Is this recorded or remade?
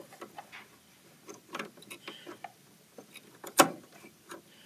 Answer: remade